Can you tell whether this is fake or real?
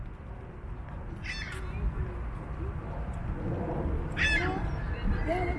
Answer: real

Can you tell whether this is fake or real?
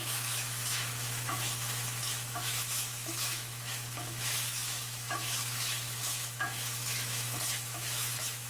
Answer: fake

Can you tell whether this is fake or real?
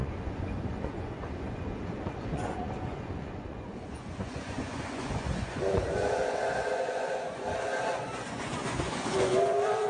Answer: fake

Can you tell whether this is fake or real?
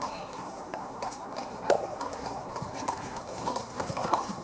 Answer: fake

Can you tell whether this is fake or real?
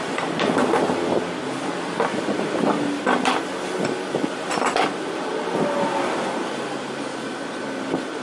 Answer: real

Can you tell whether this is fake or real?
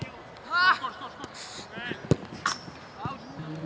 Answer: real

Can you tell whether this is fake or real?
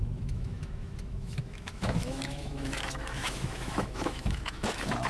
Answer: fake